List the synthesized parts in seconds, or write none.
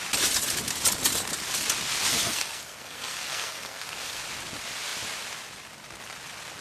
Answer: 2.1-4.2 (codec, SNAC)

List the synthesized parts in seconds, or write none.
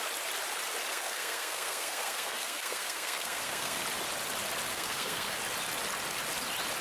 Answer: 0.9-3.8 (codec, SNAC); 4.7-5.4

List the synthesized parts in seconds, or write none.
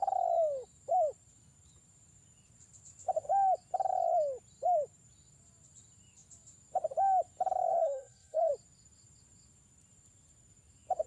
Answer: 7.7-8.5 (codec, SNAC)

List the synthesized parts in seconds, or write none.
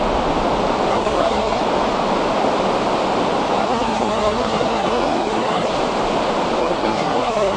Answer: 0.9-1.6 (codec, SNAC); 3.6-5.7; 6.6-7.6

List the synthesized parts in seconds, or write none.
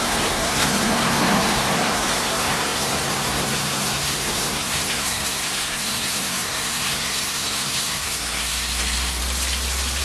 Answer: 0.0-9.2 (codec, SNAC)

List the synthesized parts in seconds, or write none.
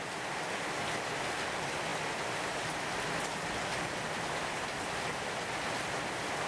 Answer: none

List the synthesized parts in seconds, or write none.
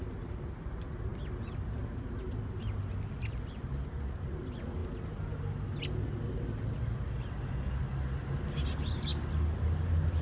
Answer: none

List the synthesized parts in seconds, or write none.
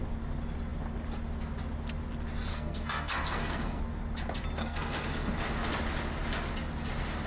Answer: 2.5-3.8 (codec, SNAC); 4.6-5.3